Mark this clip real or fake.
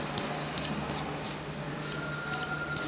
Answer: real